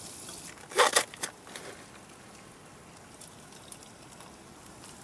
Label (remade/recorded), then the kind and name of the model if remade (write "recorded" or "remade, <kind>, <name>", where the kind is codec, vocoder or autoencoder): recorded